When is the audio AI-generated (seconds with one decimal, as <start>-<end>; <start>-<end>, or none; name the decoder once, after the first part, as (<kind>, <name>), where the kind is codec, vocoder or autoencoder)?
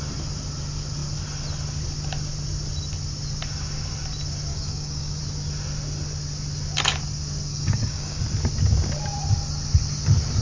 4.5-5.2 (codec, DAC); 7.5-8.2